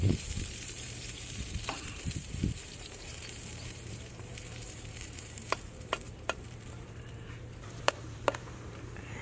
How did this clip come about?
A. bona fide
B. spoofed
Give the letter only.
B